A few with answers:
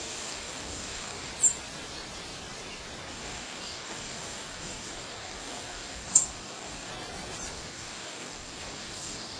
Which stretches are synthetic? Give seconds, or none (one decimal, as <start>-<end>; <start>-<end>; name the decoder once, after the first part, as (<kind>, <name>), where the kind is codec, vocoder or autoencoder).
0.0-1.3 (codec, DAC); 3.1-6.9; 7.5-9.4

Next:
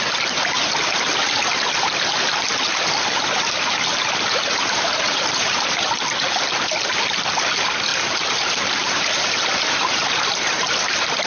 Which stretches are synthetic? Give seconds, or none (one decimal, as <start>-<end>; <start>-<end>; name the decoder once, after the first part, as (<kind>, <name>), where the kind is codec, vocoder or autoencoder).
4.0-6.0 (vocoder, BigVGAN v2); 7.9-10.7

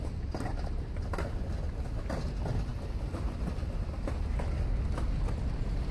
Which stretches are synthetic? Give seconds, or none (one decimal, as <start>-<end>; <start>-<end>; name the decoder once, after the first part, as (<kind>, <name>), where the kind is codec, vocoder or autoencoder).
none